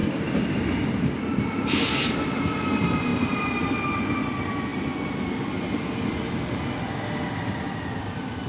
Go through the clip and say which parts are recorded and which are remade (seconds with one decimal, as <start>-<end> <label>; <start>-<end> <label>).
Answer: 0.0-8.5 recorded